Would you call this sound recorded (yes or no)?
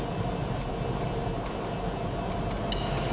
yes